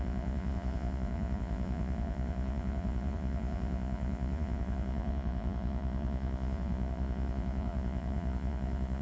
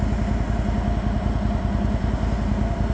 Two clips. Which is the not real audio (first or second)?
first